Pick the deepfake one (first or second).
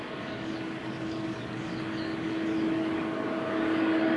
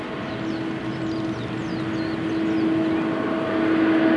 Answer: first